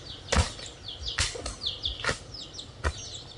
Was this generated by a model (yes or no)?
no